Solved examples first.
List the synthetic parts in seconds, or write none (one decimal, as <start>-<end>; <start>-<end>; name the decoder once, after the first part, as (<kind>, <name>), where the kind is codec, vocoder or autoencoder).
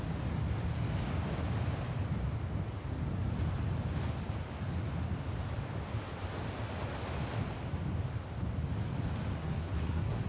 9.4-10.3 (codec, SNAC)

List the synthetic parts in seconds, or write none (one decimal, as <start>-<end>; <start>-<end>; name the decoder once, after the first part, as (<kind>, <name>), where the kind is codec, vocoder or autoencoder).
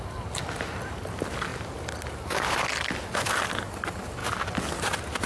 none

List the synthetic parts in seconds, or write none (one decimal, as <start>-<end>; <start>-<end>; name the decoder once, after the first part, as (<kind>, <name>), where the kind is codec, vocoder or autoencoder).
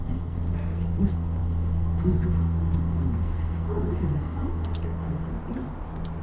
0.0-5.3 (codec, SNAC)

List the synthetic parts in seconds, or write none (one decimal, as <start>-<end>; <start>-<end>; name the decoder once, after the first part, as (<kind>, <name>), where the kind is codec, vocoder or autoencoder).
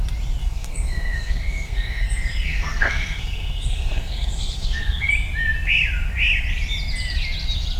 0.4-5.1 (codec, SNAC)